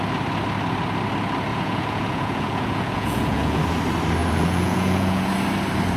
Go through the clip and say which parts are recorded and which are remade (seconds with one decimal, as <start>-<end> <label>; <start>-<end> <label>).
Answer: 0.0-1.5 recorded; 1.5-3.6 remade; 3.6-4.2 recorded; 4.2-5.3 remade; 5.3-6.0 recorded